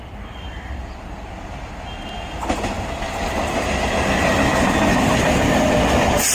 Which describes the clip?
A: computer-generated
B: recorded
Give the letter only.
B